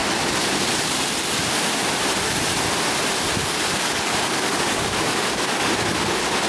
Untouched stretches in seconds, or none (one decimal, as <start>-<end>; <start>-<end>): 0.0-3.4